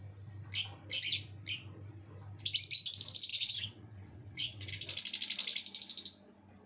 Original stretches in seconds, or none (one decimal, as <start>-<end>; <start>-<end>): 0.0-3.3; 4.7-6.7